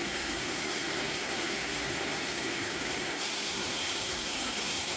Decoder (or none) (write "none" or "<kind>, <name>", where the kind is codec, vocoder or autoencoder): codec, SNAC